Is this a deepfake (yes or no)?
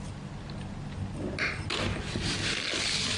no